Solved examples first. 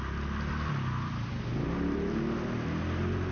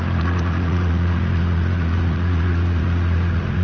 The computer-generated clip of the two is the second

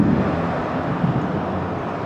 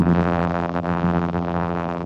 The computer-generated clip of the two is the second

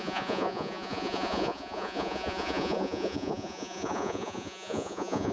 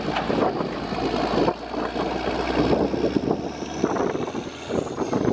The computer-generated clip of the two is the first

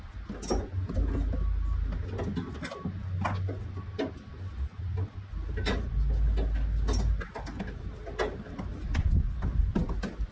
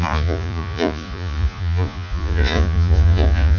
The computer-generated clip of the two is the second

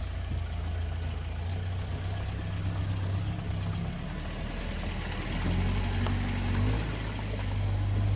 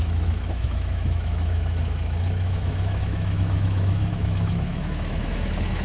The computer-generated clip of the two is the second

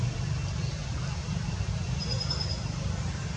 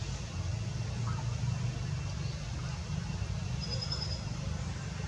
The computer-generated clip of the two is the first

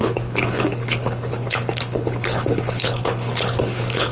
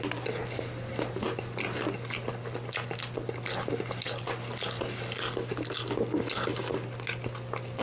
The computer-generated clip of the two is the first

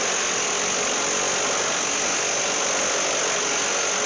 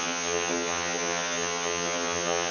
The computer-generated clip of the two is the second